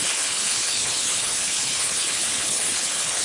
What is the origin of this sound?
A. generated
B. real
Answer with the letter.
A